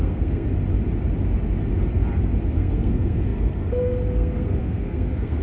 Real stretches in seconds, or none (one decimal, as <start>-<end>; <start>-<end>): 0.6-2.5